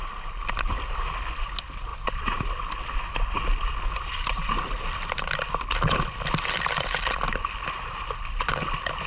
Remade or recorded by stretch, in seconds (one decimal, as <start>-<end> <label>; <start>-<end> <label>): 0.0-9.1 recorded